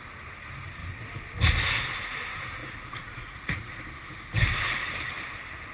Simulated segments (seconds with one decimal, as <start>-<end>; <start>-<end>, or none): 2.6-3.7